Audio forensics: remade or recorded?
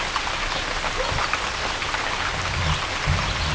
recorded